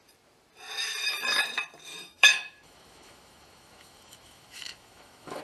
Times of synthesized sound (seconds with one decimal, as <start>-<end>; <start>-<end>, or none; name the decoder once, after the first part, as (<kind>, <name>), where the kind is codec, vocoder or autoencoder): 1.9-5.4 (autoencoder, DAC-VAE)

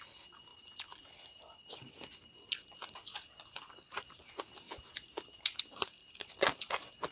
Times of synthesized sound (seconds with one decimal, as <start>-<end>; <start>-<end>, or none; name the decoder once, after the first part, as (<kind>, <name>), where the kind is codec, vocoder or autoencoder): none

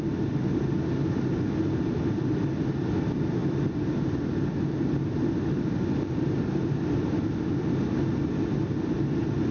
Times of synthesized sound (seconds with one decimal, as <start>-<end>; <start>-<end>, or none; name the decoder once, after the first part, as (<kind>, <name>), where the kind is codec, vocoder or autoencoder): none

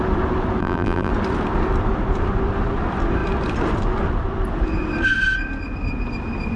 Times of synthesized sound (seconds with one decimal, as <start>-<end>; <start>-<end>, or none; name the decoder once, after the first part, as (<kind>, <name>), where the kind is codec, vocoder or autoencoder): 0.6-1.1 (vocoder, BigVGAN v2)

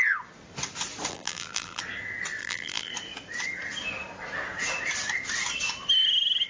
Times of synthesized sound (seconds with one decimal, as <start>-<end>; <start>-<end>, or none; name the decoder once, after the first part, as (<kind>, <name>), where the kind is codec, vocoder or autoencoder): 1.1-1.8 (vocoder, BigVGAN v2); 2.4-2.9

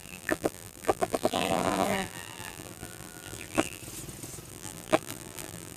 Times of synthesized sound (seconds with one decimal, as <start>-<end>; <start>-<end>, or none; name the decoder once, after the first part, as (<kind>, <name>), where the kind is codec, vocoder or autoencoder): 0.0-3.8 (vocoder, BigVGAN v2); 4.5-5.8

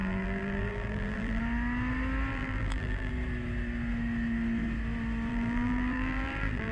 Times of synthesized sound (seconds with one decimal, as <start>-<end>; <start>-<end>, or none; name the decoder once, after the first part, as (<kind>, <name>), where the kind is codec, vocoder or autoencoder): 0.0-1.4 (vocoder, BigVGAN v2); 2.3-3.1; 5.3-6.7

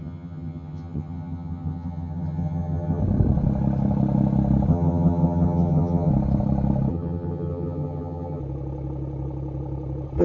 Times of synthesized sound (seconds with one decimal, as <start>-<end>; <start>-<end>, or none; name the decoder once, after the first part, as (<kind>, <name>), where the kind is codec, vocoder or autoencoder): 0.0-3.0 (vocoder, HiFi-GAN); 4.7-6.1; 6.9-8.4